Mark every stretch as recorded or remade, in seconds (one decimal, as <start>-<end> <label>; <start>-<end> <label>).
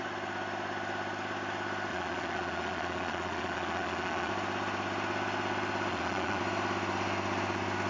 0.0-1.9 recorded; 1.9-4.3 remade; 4.3-5.9 recorded; 5.9-6.4 remade; 6.4-7.9 recorded